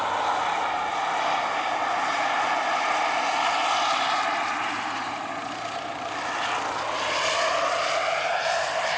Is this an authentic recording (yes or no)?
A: yes